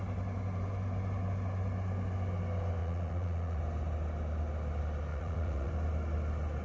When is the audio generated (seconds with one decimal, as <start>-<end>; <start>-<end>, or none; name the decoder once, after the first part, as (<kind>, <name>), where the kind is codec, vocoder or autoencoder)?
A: 2.8-3.6 (vocoder, Vocos); 5.1-5.7